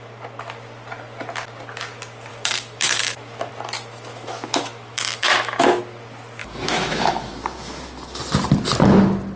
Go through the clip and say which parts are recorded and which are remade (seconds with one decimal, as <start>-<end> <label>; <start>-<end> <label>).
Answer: 0.0-2.3 recorded; 2.3-3.5 remade; 3.5-4.1 recorded; 4.1-5.8 remade; 5.8-6.4 recorded; 6.4-8.2 remade; 8.2-9.4 recorded